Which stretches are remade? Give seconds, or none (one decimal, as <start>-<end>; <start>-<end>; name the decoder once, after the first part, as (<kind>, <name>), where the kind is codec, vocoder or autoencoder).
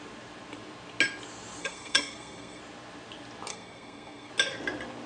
1.6-2.6 (codec, SNAC); 3.5-4.3